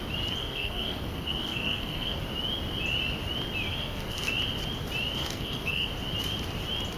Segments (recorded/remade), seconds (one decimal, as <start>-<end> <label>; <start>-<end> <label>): 0.0-0.4 recorded; 0.4-2.2 remade; 2.2-3.7 recorded; 3.7-4.3 remade; 4.3-5.2 recorded; 5.2-5.9 remade; 5.9-7.0 recorded